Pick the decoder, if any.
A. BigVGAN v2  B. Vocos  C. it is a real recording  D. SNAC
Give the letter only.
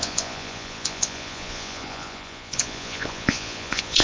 B